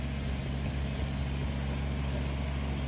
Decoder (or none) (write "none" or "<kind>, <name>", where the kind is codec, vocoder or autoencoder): none